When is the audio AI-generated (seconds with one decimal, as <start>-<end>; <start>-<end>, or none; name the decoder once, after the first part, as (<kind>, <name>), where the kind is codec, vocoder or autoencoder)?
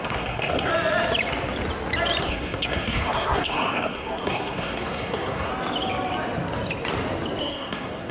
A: 0.0-0.7 (codec, SNAC); 2.2-5.5; 7.4-8.1